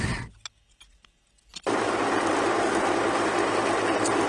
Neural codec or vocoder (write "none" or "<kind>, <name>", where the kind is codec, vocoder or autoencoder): none